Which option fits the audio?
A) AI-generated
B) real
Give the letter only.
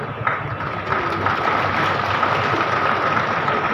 B